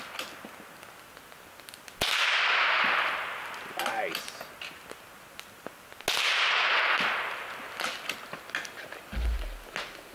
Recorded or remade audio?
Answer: recorded